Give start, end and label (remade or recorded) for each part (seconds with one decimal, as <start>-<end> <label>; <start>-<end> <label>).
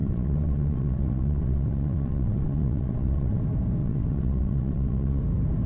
0.0-3.4 remade; 3.4-3.8 recorded; 3.8-5.2 remade; 5.2-5.7 recorded